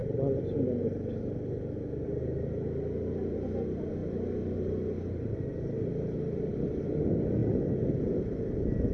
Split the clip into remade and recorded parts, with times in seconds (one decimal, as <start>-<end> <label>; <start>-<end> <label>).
0.0-8.9 recorded